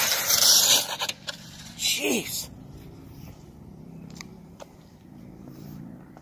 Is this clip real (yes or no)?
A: no